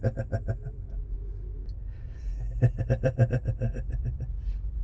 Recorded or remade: recorded